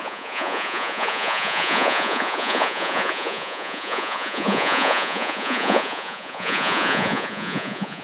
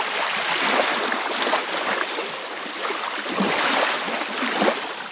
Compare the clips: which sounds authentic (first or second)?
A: second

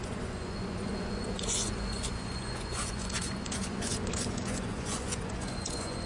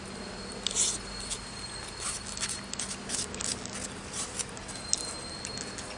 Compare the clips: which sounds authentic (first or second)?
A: second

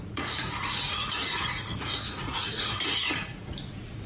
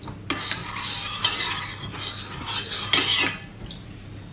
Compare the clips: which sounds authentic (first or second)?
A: second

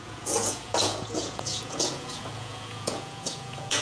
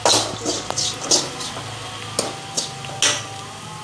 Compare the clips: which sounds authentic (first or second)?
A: second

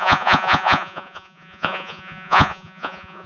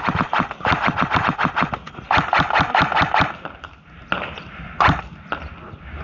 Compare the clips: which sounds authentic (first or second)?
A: second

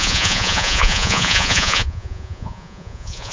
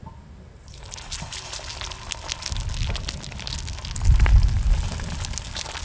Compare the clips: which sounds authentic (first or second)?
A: second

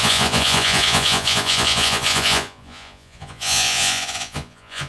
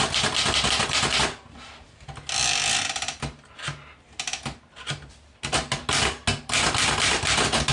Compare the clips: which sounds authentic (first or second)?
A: second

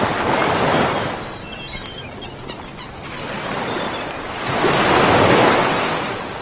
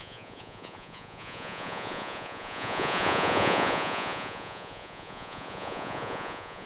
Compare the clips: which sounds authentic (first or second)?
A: first